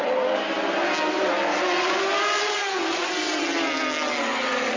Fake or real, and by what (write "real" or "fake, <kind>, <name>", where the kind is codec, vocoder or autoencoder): real